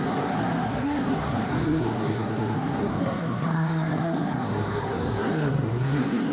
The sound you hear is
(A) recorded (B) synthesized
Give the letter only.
B